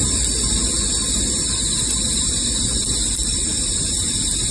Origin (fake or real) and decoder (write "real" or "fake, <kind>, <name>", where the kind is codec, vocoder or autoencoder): real